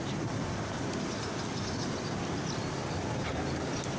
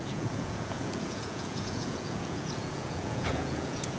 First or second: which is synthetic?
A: second